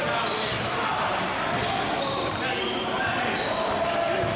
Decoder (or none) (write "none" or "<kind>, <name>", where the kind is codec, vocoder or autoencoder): none